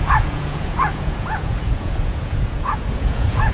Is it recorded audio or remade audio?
remade